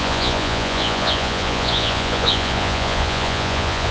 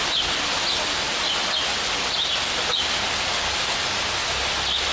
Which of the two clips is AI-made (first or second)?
first